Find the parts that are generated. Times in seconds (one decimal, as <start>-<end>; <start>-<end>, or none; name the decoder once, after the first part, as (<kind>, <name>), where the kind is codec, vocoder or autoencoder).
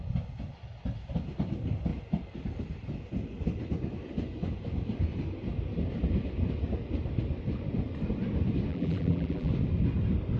8.7-9.5 (vocoder, BigVGAN v2)